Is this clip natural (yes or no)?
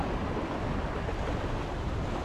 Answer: yes